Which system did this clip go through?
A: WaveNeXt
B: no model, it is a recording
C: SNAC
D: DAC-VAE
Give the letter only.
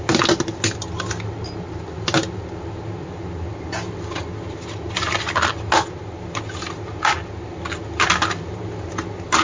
B